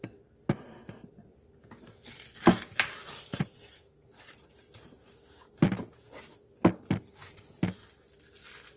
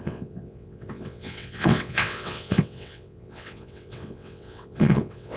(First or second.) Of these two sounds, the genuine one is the first